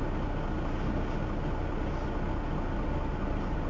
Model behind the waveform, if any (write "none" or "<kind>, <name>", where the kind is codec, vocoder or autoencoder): none